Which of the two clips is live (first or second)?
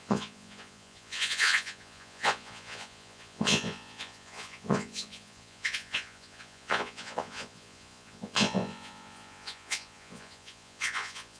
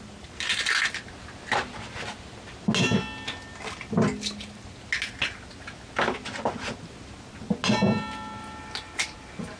second